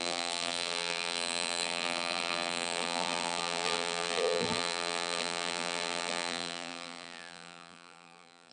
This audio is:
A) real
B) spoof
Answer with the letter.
B